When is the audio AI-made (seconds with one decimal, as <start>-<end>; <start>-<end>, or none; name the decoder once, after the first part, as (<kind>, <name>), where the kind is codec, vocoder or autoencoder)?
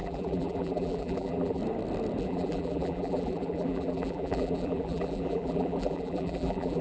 0.0-1.6 (vocoder, BigVGAN v2); 2.2-6.8